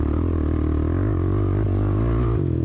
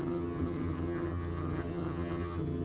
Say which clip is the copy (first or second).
second